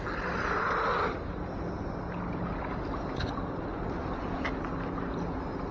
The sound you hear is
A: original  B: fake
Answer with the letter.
A